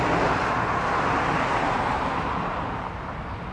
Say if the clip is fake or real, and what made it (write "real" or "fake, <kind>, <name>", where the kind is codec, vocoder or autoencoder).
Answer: real